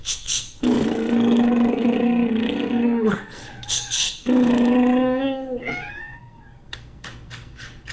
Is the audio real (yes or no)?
no